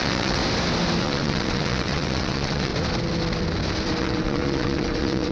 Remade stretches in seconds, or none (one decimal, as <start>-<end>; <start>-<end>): 0.0-0.4; 1.0-2.7; 4.0-5.3